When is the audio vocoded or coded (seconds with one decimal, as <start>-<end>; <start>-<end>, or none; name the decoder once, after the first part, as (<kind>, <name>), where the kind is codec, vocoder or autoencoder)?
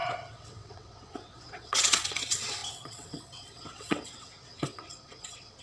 0.0-5.6 (vocoder, WaveNeXt)